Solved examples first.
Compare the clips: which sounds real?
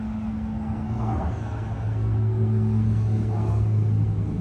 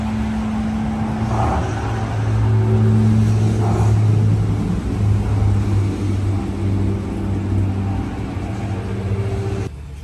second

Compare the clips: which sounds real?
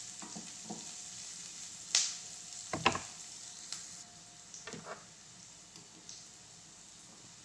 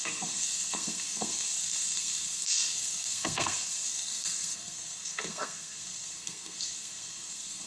first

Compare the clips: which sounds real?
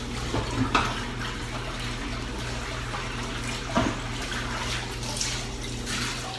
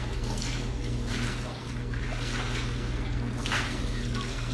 first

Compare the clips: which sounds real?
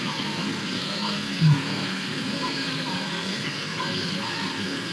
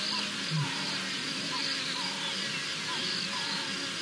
second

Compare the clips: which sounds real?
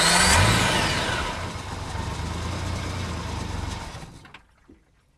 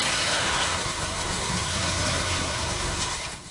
first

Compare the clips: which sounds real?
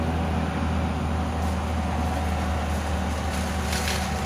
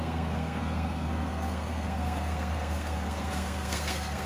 first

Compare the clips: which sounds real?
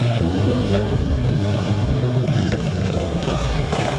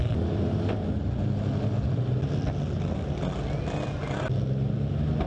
second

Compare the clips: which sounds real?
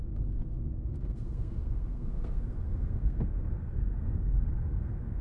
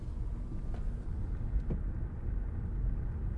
second